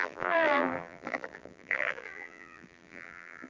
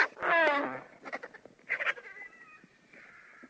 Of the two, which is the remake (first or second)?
first